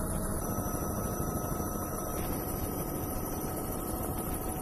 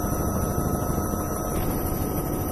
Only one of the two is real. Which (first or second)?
second